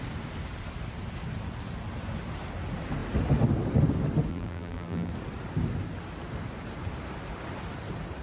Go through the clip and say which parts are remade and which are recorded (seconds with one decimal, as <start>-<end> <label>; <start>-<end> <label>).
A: 0.0-4.3 recorded; 4.3-5.1 remade; 5.1-8.2 recorded